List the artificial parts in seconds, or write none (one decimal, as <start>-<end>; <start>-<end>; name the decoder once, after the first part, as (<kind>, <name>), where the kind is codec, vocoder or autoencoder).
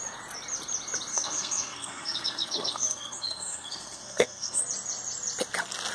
1.1-4.6 (codec, SNAC)